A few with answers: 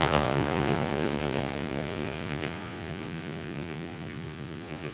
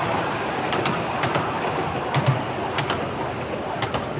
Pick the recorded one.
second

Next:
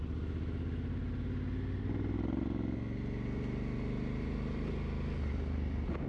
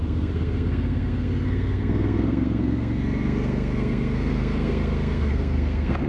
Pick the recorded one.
first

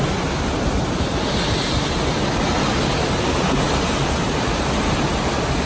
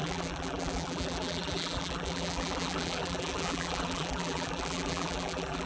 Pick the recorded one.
first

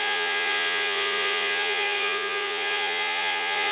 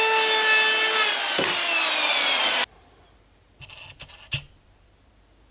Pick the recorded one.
second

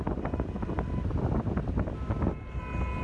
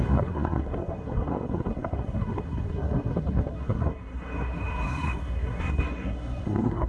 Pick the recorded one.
first